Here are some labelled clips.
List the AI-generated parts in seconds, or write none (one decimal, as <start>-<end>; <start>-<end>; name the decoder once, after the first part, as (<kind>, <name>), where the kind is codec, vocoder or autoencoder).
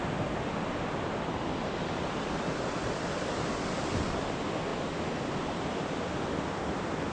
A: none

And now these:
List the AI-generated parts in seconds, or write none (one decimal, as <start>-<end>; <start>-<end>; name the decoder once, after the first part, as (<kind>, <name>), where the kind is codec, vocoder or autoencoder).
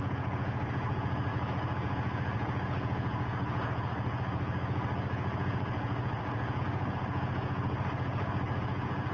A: 0.0-9.1 (vocoder, Vocos)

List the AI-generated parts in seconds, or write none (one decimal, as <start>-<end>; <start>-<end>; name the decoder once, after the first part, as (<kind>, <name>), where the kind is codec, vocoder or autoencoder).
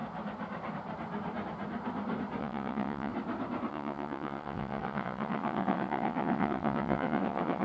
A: 2.4-3.1 (vocoder, WaveNeXt); 3.7-7.6